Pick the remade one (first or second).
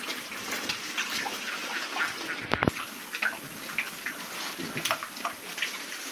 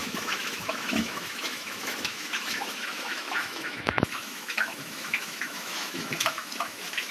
second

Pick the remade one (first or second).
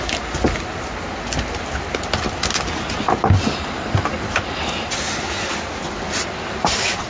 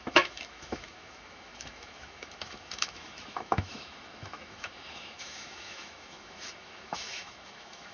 second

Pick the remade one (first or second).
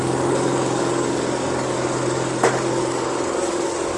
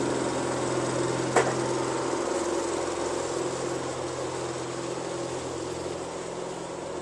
first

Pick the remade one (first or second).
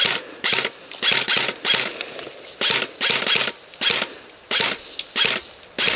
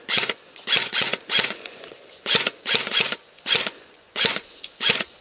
second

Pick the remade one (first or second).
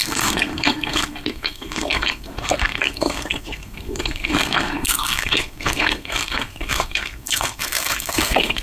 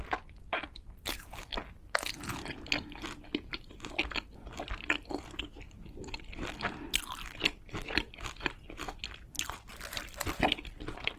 first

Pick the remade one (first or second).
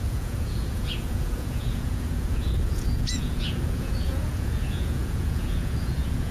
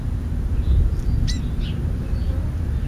first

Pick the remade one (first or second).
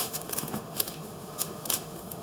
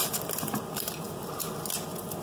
first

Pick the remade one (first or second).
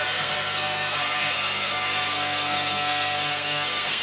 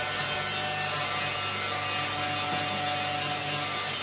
first